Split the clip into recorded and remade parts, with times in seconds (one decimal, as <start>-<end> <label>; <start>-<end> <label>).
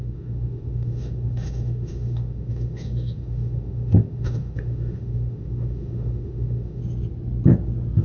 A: 0.0-6.8 remade; 6.8-8.0 recorded